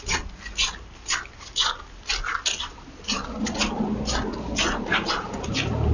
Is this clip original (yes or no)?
yes